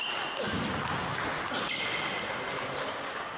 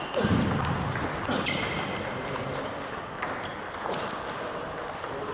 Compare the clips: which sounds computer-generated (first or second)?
second